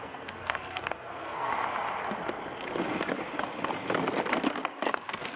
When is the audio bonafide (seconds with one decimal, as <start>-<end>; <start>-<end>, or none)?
1.5-4.7